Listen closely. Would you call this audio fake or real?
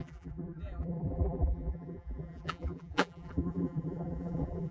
fake